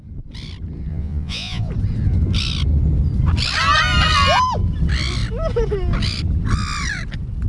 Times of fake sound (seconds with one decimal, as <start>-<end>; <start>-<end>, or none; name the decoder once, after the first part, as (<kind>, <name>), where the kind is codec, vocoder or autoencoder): 0.9-1.7 (vocoder, Vocos)